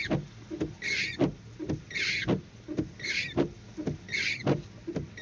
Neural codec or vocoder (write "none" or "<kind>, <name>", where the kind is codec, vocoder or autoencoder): none